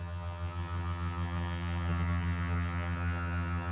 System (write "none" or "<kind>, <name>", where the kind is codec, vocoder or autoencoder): vocoder, HiFi-GAN